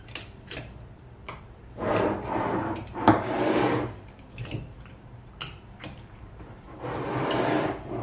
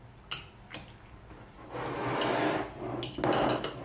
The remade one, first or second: first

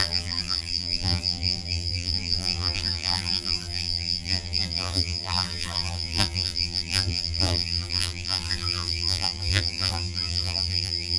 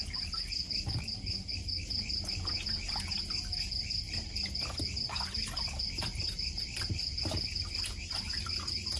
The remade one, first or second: first